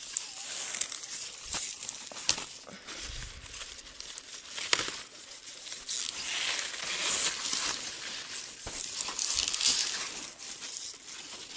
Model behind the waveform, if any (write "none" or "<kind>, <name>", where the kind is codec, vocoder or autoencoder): none